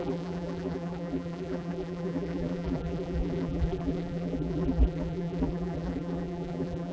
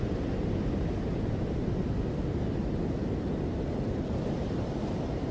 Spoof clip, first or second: first